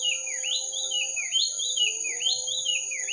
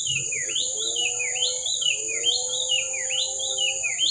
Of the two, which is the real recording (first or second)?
first